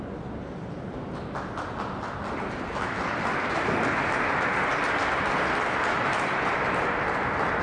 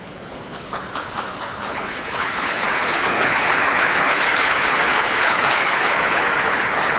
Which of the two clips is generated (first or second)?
second